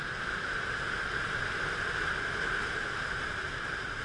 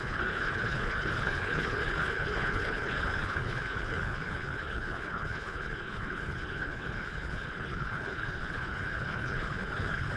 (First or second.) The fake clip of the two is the second